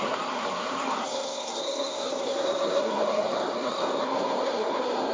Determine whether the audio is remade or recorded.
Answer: remade